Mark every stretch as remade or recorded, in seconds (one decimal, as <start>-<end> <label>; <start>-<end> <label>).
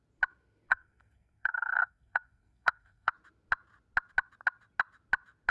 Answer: 0.0-0.7 recorded; 0.7-3.1 remade; 3.1-5.5 recorded